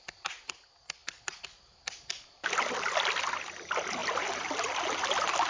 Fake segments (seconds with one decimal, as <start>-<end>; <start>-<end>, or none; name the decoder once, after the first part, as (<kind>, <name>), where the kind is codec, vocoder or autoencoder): none